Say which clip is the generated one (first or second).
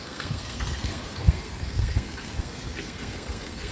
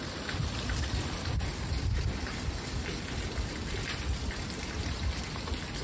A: first